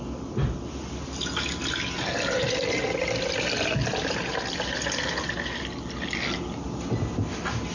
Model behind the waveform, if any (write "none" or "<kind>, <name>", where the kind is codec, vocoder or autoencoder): none